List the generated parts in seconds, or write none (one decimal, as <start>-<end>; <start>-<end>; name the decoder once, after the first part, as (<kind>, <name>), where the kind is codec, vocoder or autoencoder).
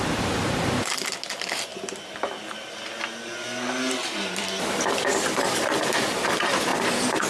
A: none